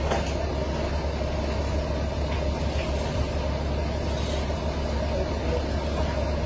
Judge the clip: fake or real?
real